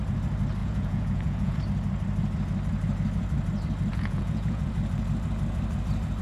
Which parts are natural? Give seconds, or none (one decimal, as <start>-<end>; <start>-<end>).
0.0-0.6; 1.6-3.9; 4.7-6.2